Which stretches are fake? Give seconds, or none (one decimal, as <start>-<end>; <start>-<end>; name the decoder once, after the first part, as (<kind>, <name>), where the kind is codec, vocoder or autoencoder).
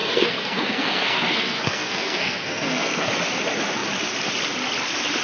0.0-3.1 (codec, SNAC)